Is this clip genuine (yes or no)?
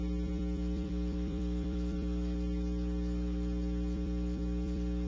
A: no